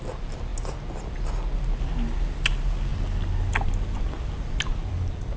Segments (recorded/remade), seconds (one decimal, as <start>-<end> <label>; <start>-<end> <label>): 0.0-5.4 recorded